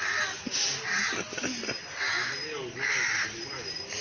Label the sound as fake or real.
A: real